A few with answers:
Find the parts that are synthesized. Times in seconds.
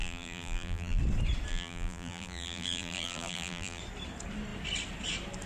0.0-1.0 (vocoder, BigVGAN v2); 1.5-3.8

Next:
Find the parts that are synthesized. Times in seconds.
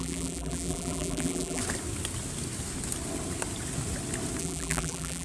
0.0-1.6 (vocoder, BigVGAN v2); 4.4-5.2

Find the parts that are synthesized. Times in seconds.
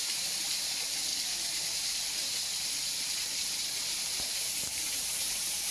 0.0-1.1 (vocoder, BigVGAN v2); 3.9-5.7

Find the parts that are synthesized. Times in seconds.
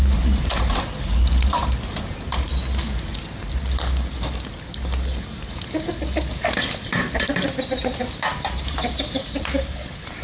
0.0-2.5 (vocoder, BigVGAN v2); 6.3-10.2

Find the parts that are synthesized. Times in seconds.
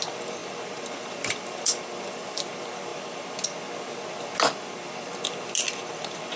none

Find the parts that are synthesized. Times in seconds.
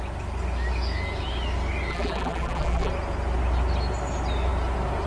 1.9-2.9 (vocoder, BigVGAN v2)